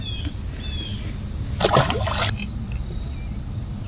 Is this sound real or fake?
real